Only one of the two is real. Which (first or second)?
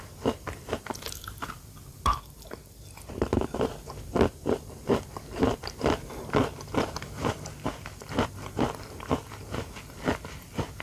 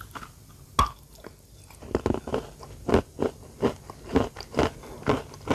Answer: second